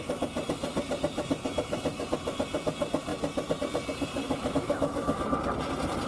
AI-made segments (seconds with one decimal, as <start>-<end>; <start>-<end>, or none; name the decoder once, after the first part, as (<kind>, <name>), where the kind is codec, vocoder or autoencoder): 4.2-5.2 (autoencoder, DAC-VAE)